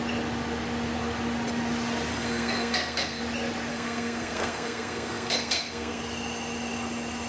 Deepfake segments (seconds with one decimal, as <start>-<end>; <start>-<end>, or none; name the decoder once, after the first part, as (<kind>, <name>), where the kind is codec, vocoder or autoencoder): 2.1-3.2 (codec, SNAC); 3.7-6.0